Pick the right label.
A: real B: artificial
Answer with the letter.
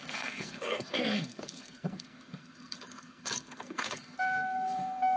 B